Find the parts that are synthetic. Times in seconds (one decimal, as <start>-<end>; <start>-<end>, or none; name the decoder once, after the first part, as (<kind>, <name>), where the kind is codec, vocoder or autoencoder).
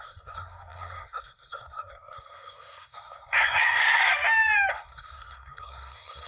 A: 0.0-4.0 (codec, SNAC); 4.7-6.3